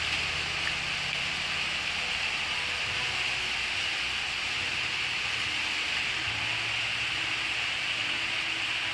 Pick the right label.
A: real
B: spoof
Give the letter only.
A